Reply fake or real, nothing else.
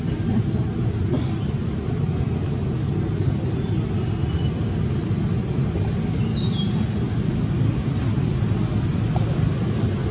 real